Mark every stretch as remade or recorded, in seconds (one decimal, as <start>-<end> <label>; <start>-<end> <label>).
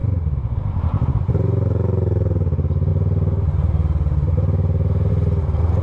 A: 0.0-5.8 recorded